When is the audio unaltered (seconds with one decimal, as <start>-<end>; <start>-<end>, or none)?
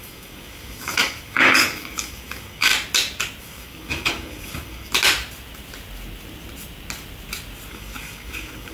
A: 2.7-3.4; 4.9-7.7